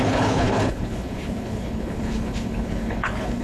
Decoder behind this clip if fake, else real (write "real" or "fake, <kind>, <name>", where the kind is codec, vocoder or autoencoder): fake, codec, HILCodec